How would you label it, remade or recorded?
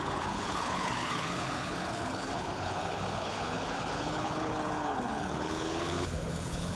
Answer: remade